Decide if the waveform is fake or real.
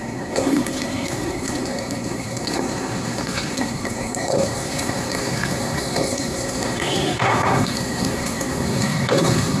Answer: fake